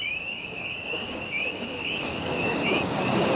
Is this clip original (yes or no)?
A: no